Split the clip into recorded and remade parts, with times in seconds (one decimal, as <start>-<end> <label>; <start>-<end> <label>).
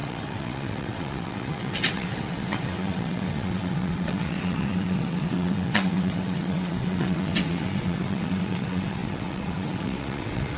0.0-10.6 remade